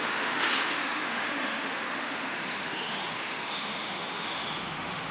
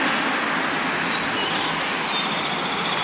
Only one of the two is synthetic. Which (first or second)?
first